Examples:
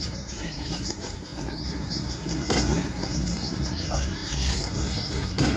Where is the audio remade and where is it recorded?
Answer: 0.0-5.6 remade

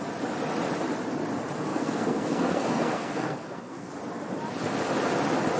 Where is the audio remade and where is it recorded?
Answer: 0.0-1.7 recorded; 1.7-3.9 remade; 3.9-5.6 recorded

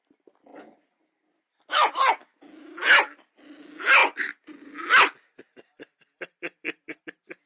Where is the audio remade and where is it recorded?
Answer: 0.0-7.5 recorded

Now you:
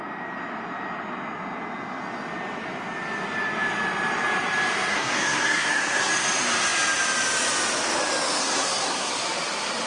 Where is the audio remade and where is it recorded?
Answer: 0.0-4.9 recorded; 4.9-6.1 remade; 6.1-8.4 recorded; 8.4-9.1 remade; 9.1-9.9 recorded

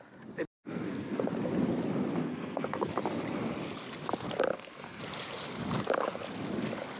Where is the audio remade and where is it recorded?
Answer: 0.0-0.6 recorded; 0.6-1.3 remade; 1.3-2.2 recorded; 2.2-2.9 remade; 2.9-4.5 recorded; 4.5-5.0 remade; 5.0-7.0 recorded

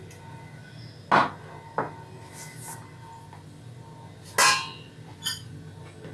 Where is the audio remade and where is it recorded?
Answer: 0.0-6.1 recorded